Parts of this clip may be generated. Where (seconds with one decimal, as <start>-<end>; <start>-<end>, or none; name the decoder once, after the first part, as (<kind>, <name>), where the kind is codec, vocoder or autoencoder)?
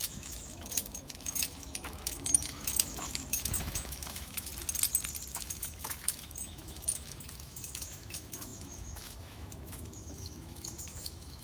0.0-4.5 (autoencoder, DAC-VAE); 5.3-11.4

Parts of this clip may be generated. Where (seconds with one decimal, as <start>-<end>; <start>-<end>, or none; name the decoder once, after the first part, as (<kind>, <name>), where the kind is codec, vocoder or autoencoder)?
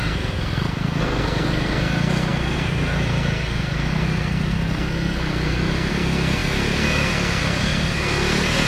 0.0-8.7 (codec, SNAC)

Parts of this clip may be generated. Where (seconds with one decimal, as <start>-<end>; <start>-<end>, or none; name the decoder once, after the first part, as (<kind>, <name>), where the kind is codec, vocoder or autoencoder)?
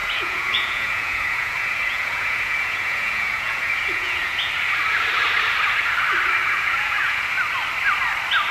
0.0-4.5 (vocoder, Vocos); 6.4-7.3